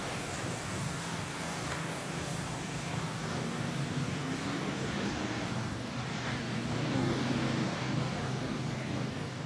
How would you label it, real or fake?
fake